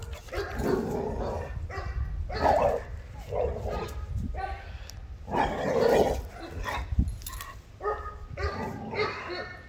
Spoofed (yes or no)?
no